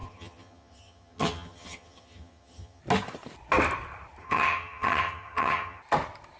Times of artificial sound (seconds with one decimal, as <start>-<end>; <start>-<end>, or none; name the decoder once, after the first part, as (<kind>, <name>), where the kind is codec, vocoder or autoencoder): 0.0-2.8 (vocoder, HiFi-GAN); 4.2-5.8